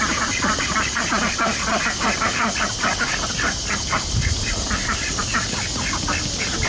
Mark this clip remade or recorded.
recorded